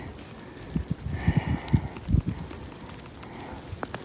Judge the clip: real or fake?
real